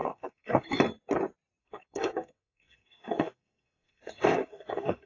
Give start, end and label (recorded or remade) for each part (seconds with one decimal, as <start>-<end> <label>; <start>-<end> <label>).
0.0-0.8 remade; 0.8-1.6 recorded; 1.6-5.1 remade